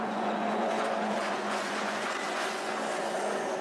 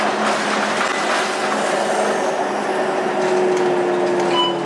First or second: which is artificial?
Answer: first